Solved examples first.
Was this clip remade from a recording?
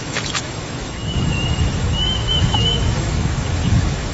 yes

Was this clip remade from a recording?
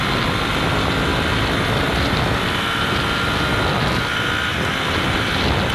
no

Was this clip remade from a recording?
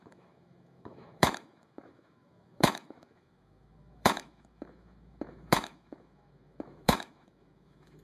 yes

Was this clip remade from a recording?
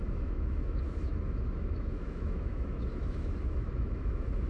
yes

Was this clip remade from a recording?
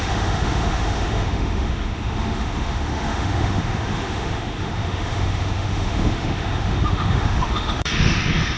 yes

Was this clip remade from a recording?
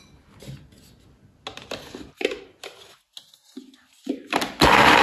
no